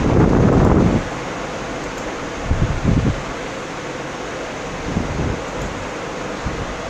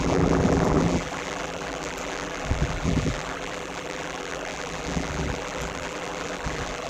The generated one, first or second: second